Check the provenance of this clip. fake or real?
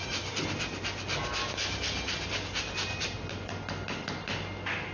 real